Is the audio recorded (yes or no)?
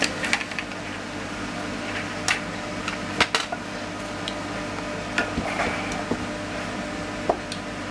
yes